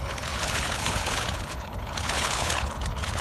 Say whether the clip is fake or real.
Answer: fake